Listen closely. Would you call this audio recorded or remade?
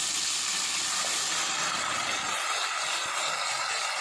recorded